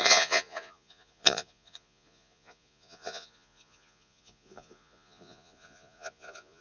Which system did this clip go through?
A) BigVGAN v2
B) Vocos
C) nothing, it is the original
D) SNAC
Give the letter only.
B